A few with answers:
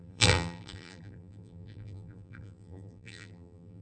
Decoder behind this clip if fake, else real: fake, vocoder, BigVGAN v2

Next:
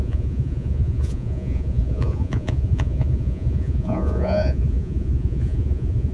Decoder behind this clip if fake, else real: fake, vocoder, Vocos